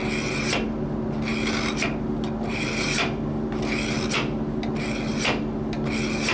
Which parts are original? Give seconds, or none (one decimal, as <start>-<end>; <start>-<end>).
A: 0.0-6.3